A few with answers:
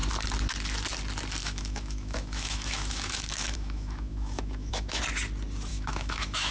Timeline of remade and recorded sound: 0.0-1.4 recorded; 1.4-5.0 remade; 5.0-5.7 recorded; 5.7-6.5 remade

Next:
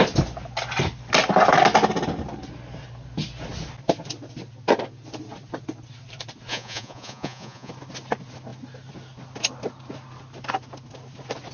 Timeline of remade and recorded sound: 0.0-6.5 recorded; 6.5-7.7 remade; 7.7-11.5 recorded

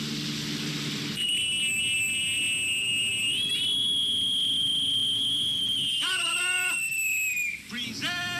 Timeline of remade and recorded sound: 0.0-8.4 recorded